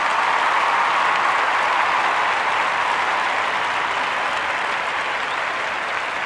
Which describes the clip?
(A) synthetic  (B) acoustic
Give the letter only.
B